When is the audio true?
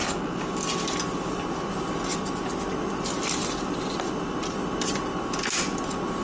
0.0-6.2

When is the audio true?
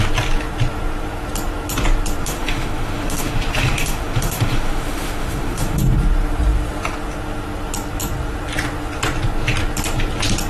0.0-2.2; 5.8-10.5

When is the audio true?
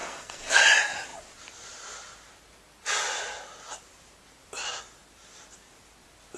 0.6-6.4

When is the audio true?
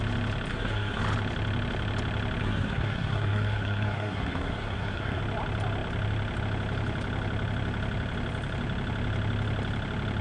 0.0-0.5; 1.0-2.4; 5.2-10.2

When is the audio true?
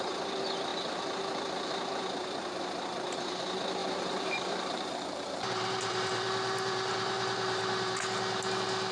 0.0-3.8; 8.0-8.9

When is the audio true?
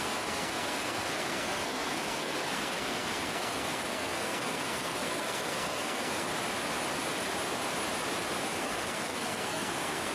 6.3-8.4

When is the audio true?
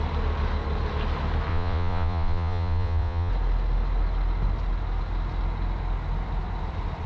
0.0-1.5; 3.3-7.1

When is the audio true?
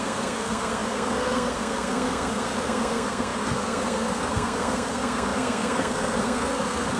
none